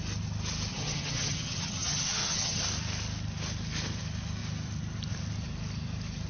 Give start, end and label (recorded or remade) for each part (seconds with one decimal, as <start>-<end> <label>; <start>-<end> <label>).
0.0-0.7 recorded; 0.7-2.6 remade; 2.6-6.3 recorded